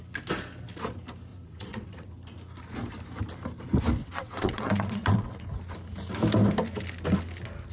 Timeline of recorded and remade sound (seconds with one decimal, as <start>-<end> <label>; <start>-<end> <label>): 0.0-1.3 recorded; 1.3-2.1 remade; 2.1-4.0 recorded; 4.0-5.4 remade; 5.4-7.7 recorded

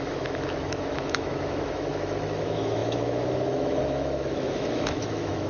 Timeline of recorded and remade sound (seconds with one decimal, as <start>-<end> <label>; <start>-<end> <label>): 0.0-5.5 remade